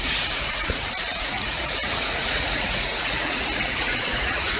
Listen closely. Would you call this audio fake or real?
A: fake